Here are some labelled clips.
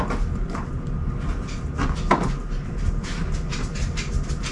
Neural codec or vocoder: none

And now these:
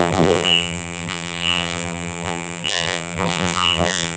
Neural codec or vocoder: vocoder, BigVGAN v2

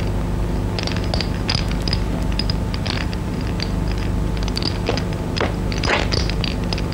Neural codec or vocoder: none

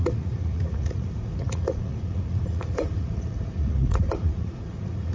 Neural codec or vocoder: vocoder, Vocos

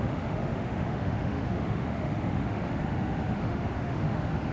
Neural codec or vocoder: autoencoder, DAC-VAE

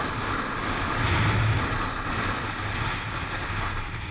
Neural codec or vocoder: none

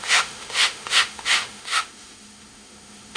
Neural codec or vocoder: autoencoder, DAC-VAE